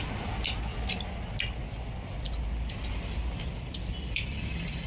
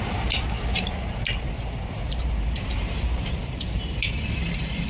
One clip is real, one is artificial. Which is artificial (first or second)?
second